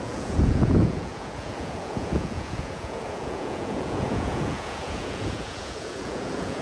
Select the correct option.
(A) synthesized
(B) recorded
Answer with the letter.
A